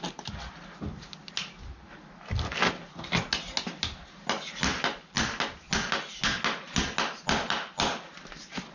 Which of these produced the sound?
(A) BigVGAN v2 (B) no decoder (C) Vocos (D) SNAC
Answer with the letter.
B